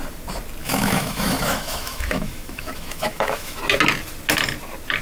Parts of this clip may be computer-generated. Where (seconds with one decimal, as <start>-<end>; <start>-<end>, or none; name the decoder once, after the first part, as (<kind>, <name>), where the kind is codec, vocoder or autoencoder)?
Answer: 0.6-3.6 (autoencoder, DAC-VAE)